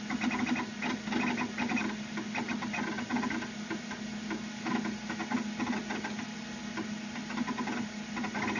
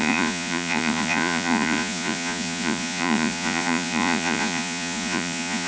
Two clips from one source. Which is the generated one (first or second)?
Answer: second